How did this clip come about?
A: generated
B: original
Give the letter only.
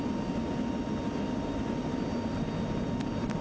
B